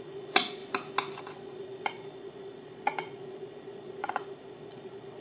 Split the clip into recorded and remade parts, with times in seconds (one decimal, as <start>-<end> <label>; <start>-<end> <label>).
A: 0.0-0.6 remade; 0.6-1.2 recorded; 1.2-5.2 remade